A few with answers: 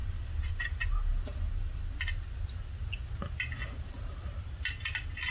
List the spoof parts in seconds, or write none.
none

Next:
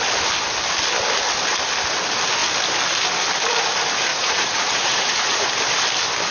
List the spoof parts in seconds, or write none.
4.1-5.5 (vocoder, Vocos)

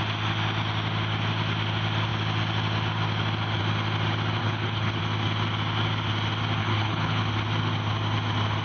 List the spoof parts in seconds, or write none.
4.4-5.0 (codec, HILCodec); 6.6-7.2

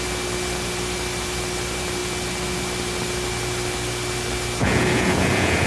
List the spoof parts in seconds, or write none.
4.6-5.7 (vocoder, Vocos)

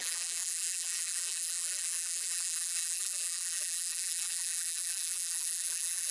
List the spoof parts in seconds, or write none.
0.0-6.1 (vocoder, BigVGAN v2)

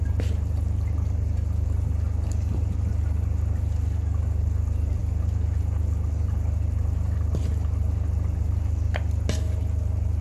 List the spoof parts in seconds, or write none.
none